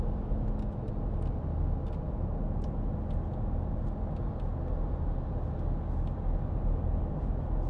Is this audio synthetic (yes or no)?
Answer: no